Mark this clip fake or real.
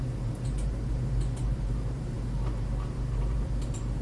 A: fake